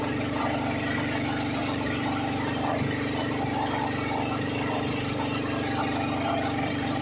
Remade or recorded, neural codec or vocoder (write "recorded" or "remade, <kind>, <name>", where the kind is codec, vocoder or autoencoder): remade, vocoder, BigVGAN v2